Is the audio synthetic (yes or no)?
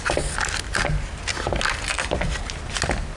no